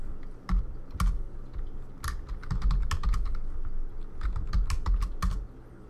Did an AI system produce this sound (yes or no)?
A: no